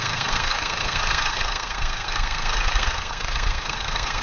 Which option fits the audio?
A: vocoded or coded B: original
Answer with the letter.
A